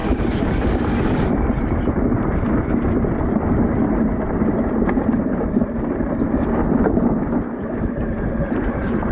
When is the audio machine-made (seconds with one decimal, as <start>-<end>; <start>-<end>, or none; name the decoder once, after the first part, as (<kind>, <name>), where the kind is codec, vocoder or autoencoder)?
none